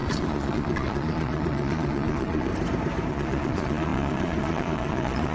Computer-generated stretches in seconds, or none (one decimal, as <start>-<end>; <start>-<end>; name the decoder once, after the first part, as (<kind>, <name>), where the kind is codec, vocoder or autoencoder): 0.0-2.5 (vocoder, Vocos); 3.1-5.3